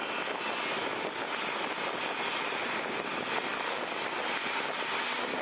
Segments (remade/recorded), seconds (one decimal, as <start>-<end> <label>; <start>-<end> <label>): 0.0-5.4 recorded